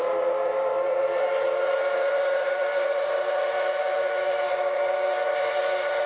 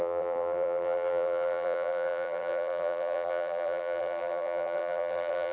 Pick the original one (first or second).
first